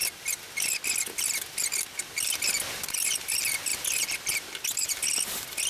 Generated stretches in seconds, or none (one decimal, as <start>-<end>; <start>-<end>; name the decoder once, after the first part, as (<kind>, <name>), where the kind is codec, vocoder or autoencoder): none